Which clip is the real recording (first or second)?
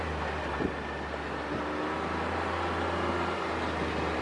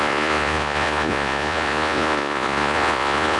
first